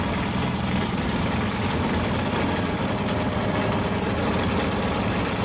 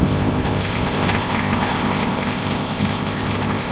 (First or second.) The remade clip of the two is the second